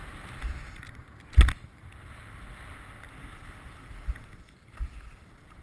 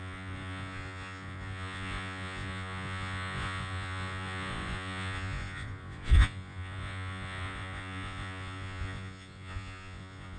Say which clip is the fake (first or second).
second